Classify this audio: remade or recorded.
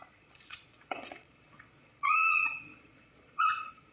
remade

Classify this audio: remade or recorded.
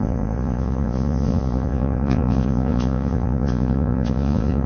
remade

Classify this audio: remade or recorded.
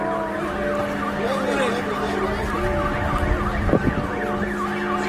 recorded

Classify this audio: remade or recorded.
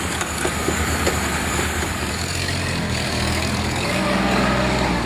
remade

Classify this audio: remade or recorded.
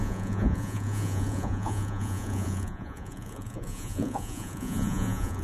remade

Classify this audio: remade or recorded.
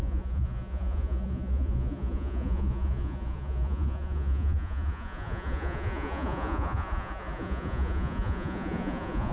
remade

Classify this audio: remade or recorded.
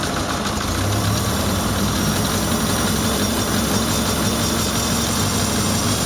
recorded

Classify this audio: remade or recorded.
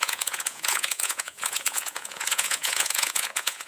remade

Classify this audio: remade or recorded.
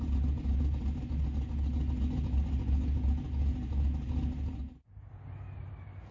recorded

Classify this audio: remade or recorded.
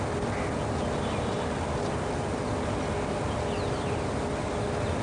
recorded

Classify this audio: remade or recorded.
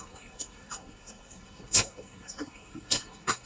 remade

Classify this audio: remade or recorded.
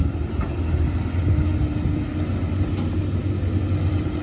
recorded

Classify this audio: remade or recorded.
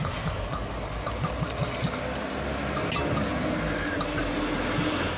recorded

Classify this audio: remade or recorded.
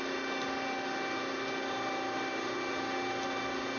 recorded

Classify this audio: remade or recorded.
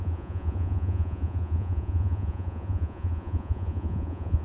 remade